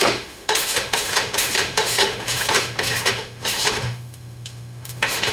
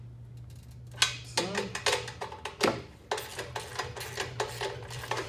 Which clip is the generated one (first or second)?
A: first